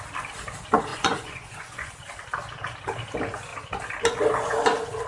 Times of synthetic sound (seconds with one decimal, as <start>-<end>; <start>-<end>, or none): 0.9-1.9